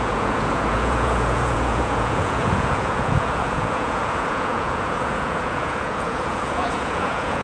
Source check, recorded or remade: remade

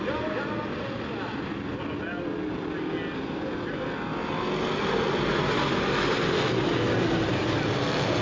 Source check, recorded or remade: recorded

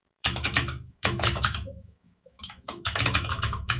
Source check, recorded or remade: remade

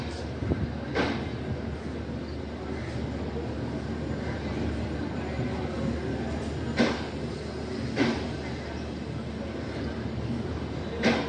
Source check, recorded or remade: recorded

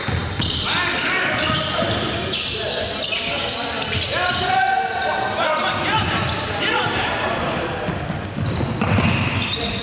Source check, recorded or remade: recorded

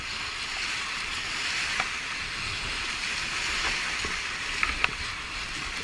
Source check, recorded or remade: recorded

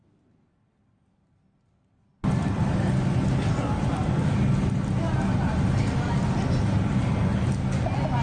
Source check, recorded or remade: recorded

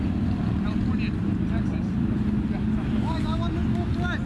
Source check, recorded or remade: recorded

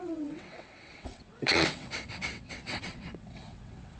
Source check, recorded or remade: remade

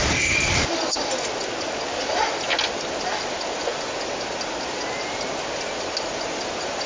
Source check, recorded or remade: recorded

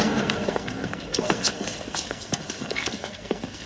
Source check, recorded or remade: remade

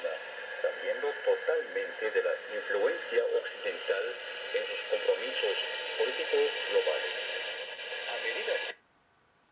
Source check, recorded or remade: recorded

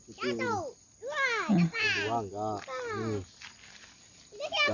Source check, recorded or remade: recorded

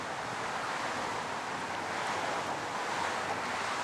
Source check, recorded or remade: recorded